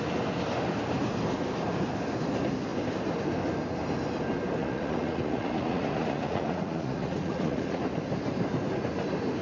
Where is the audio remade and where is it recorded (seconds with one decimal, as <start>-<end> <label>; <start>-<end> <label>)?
0.0-4.6 recorded; 4.6-7.8 remade; 7.8-9.4 recorded